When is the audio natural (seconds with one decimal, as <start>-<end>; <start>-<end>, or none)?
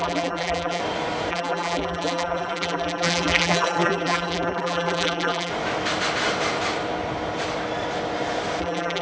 0.8-1.3; 5.5-8.6